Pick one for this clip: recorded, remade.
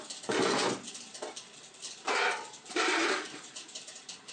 remade